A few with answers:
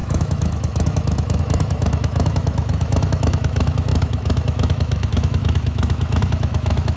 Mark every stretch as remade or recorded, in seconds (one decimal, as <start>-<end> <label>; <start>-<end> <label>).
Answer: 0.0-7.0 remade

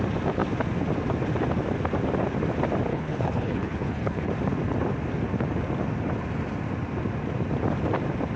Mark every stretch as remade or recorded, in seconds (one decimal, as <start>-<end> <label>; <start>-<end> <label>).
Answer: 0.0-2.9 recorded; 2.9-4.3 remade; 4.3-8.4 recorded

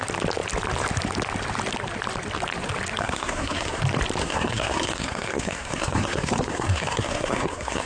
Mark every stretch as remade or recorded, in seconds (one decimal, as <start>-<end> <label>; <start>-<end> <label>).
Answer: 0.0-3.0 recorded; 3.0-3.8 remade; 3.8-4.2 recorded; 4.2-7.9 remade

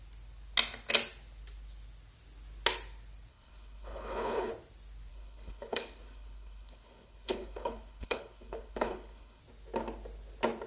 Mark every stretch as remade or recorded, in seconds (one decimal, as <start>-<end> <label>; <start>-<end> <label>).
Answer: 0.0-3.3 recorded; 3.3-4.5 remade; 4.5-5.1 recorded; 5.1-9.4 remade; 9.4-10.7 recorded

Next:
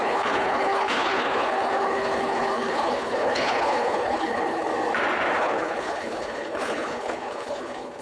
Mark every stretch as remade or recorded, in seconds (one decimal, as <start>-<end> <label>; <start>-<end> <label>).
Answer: 0.0-4.7 remade; 4.7-5.4 recorded; 5.4-8.0 remade